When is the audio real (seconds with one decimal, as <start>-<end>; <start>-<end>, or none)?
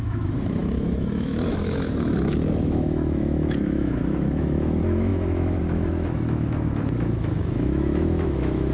none